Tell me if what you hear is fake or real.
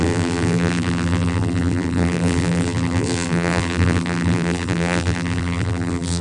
fake